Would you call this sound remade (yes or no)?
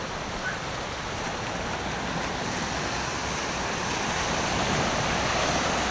no